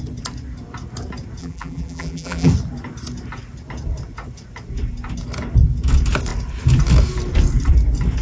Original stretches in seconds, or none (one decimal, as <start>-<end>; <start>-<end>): 0.0-1.4; 2.5-8.2